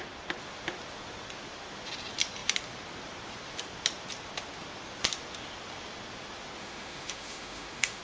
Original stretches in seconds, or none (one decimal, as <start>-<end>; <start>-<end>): 0.0-6.6